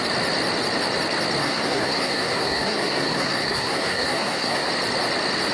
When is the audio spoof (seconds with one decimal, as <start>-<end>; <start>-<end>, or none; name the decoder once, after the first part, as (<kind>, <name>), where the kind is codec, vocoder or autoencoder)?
1.4-4.7 (codec, SNAC)